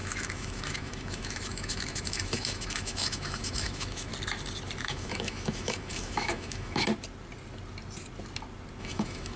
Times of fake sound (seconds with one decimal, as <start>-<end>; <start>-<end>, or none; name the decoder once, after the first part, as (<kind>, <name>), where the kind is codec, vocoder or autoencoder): 0.0-4.1 (autoencoder, DAC-VAE); 4.8-6.9; 8.8-9.4